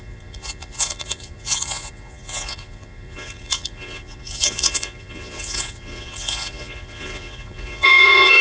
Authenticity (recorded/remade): remade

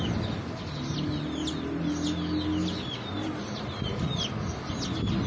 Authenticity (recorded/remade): recorded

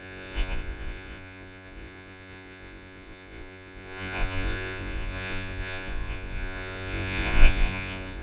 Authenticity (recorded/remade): remade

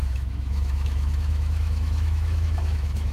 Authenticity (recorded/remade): remade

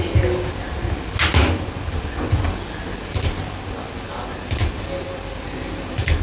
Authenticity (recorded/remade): recorded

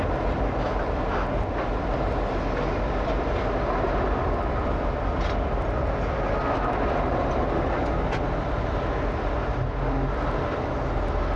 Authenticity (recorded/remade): recorded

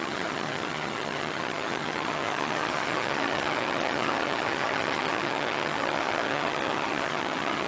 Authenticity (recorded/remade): remade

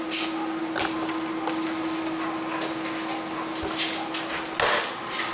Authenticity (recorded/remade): recorded